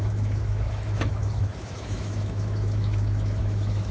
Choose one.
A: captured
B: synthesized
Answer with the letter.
B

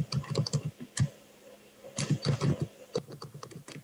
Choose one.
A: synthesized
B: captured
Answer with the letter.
B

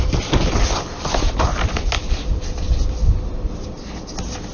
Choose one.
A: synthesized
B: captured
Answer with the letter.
B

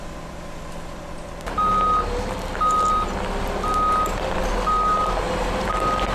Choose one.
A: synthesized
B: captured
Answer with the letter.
B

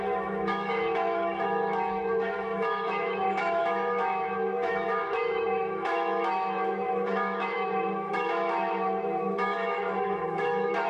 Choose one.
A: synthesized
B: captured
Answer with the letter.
A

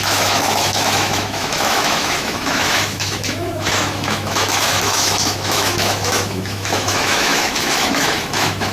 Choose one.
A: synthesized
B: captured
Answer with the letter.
A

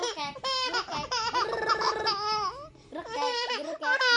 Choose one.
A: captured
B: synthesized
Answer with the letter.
A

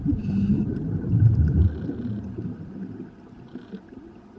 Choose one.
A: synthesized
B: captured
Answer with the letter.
B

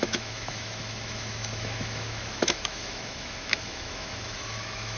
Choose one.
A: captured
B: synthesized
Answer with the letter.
B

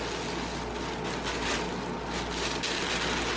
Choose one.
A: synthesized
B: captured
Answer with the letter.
B